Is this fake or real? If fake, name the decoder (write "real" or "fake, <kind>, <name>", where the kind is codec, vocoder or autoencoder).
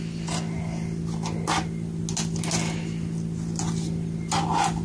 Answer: real